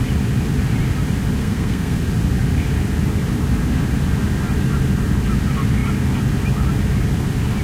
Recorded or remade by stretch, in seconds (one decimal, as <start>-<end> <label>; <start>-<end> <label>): 0.0-1.4 recorded; 1.4-2.0 remade; 2.0-7.6 recorded